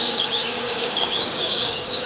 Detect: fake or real fake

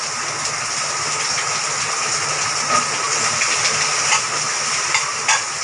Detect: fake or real real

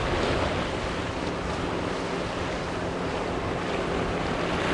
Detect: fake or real real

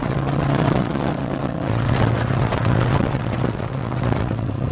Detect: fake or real fake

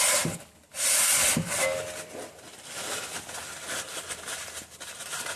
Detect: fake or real real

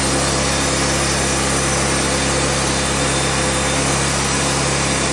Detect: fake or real real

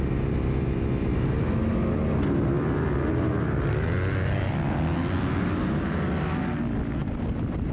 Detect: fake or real real